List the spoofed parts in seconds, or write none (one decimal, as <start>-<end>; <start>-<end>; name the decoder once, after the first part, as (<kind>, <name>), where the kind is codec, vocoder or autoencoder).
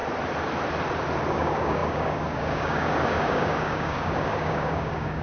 1.3-5.2 (codec, DAC)